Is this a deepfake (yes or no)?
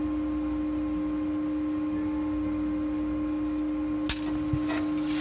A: no